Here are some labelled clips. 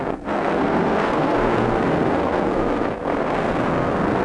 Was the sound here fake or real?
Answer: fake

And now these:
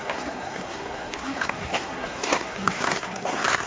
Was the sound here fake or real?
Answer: fake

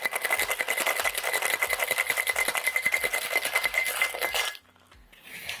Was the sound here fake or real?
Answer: real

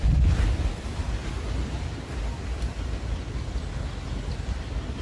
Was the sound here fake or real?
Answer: real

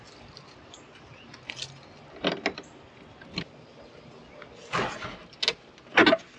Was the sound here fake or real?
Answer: real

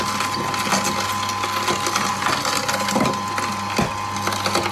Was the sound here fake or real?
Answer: real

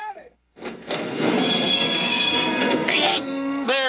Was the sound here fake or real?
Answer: fake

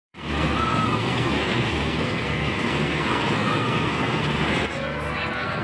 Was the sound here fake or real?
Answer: fake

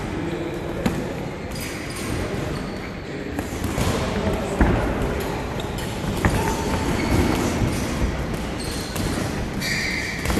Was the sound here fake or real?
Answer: real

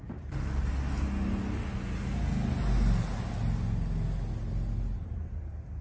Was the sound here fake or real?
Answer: real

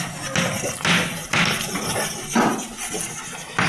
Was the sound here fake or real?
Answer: real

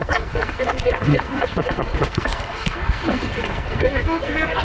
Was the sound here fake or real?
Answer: fake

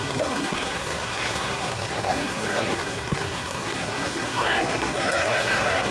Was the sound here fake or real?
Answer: fake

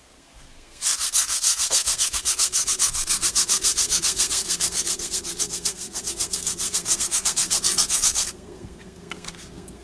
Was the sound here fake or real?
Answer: fake